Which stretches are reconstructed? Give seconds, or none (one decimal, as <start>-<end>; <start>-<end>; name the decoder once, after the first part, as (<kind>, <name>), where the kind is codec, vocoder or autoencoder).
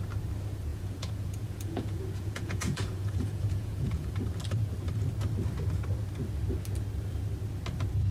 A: 0.7-4.1 (vocoder, Vocos)